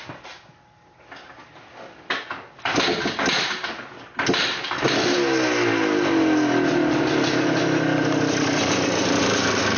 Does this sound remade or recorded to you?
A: recorded